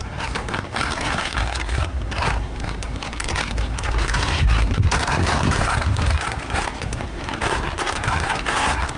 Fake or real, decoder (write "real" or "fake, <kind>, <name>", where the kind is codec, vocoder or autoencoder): fake, codec, SNAC